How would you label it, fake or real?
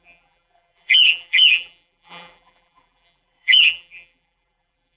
fake